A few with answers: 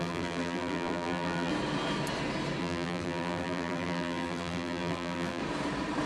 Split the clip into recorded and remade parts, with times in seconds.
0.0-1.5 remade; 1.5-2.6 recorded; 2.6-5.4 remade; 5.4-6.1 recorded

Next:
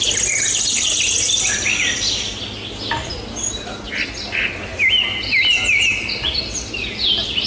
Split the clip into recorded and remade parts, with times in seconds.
0.0-7.5 recorded

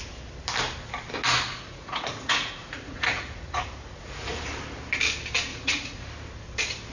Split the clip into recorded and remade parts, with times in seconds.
0.0-1.5 recorded; 1.5-4.4 remade; 4.4-5.5 recorded; 5.5-6.1 remade; 6.1-6.9 recorded

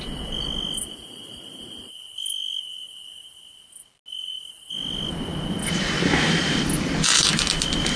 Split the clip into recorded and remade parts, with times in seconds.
0.0-8.0 recorded

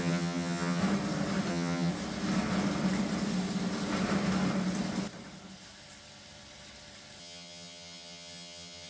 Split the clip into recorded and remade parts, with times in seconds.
0.0-0.8 remade; 0.8-1.5 recorded; 1.5-1.9 remade; 1.9-7.2 recorded; 7.2-8.9 remade